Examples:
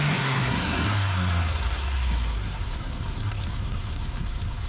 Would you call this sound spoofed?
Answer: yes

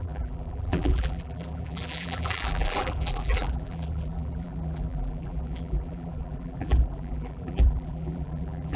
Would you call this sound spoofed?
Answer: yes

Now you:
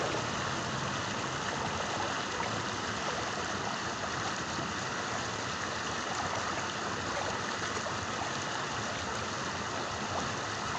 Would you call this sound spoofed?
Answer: no